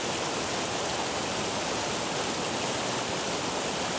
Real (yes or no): yes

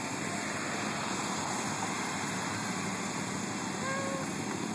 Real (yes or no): yes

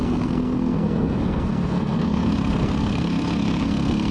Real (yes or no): no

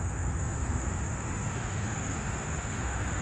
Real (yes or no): no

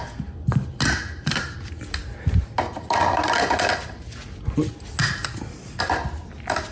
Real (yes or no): yes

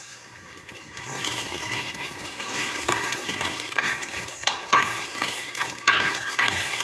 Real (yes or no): no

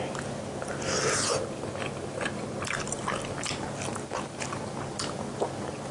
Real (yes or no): yes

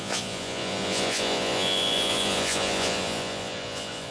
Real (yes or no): no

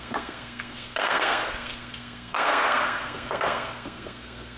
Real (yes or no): no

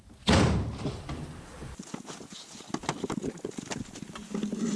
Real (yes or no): yes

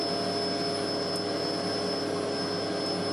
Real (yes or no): yes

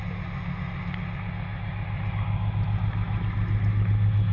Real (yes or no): yes